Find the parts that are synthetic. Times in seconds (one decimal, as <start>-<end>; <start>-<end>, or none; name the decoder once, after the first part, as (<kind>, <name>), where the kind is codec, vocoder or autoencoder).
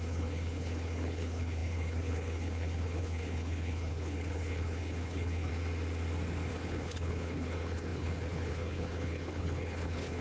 0.0-5.5 (codec, HILCodec); 6.5-10.2